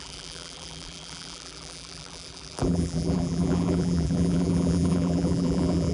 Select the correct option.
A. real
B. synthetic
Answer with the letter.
B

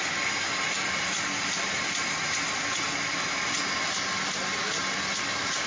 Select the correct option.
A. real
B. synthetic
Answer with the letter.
A